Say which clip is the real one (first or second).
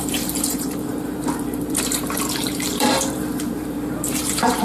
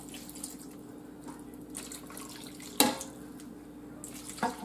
second